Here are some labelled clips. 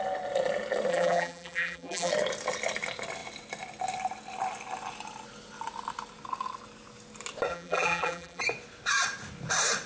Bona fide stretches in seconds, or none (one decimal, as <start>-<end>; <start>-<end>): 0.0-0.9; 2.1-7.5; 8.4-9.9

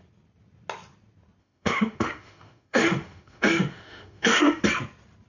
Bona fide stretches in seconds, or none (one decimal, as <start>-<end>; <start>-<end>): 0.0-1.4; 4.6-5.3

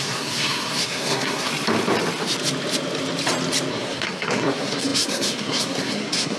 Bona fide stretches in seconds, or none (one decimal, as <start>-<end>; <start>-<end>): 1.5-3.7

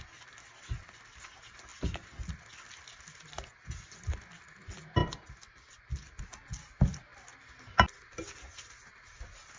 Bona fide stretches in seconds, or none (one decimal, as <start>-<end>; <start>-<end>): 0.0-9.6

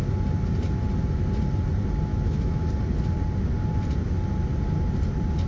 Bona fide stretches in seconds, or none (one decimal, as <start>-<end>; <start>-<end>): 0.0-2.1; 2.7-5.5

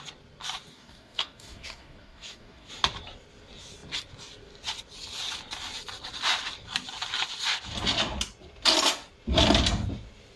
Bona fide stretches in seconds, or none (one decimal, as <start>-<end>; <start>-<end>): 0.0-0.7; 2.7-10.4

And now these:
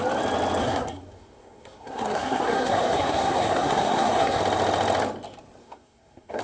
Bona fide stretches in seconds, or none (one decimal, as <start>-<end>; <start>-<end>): 0.0-0.6; 4.4-5.6